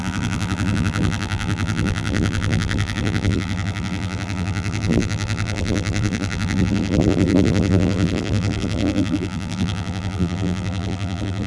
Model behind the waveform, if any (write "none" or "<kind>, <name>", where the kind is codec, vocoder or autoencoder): vocoder, BigVGAN v2